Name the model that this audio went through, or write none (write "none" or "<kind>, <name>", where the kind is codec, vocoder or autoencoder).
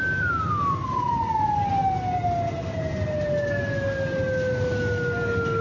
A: none